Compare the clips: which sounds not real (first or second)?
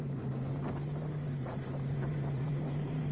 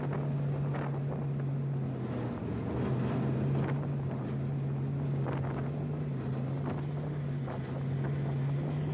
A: first